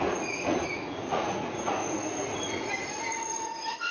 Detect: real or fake fake